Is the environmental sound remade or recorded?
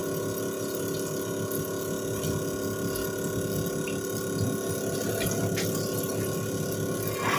recorded